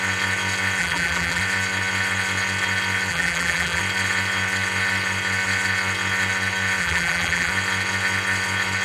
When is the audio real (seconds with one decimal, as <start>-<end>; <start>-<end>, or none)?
0.0-0.8; 1.4-3.1; 3.8-6.8; 7.5-8.8